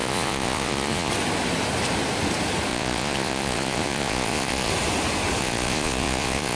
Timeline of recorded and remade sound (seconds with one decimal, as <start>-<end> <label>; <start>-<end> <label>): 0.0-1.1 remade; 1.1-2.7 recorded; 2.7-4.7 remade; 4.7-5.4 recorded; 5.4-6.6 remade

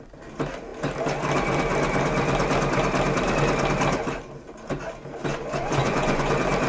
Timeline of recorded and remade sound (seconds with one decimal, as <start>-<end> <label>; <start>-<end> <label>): 0.0-5.3 recorded; 5.3-6.3 remade; 6.3-6.7 recorded

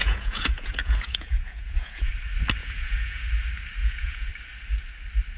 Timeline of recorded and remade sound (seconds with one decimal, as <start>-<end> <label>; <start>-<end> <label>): 0.0-2.1 remade; 2.1-2.6 recorded; 2.6-3.3 remade; 3.3-3.8 recorded; 3.8-4.3 remade; 4.3-5.4 recorded

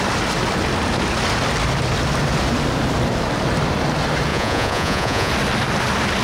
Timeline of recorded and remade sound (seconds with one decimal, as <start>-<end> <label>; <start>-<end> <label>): 0.0-4.3 recorded; 4.3-5.3 remade; 5.3-6.2 recorded

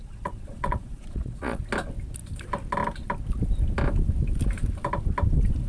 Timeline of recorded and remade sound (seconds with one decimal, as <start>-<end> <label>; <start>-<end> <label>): 0.0-1.6 remade; 1.6-5.7 recorded